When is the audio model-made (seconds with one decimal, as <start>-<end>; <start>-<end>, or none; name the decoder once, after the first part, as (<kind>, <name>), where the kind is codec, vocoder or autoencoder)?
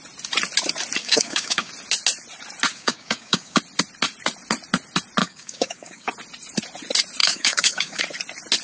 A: 1.0-1.7 (codec, DAC); 2.7-3.6; 5.2-6.1; 7.2-8.0